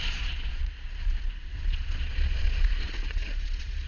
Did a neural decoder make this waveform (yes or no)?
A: yes